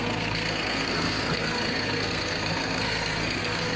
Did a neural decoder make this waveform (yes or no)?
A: yes